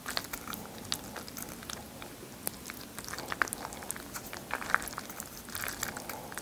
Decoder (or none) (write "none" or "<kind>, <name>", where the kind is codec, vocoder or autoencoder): none